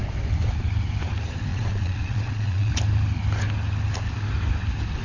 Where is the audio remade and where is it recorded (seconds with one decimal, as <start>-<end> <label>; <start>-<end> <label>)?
0.0-1.5 recorded; 1.5-2.7 remade; 2.7-5.0 recorded